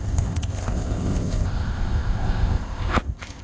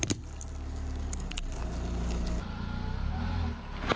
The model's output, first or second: first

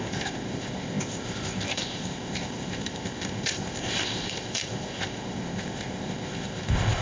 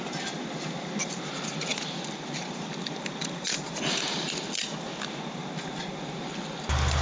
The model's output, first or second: first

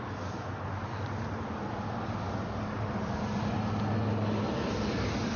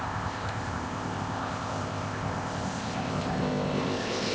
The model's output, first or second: second